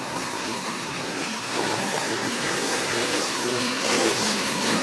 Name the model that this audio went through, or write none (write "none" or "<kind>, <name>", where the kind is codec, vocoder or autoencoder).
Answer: codec, SNAC